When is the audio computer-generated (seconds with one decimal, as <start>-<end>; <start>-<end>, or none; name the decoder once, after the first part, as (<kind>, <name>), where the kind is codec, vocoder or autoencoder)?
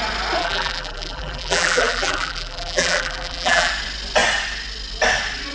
0.4-3.7 (vocoder, BigVGAN v2)